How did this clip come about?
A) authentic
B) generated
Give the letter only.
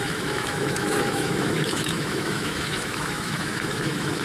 B